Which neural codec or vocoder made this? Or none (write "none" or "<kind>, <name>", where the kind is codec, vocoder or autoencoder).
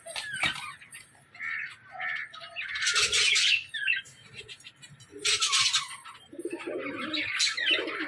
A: none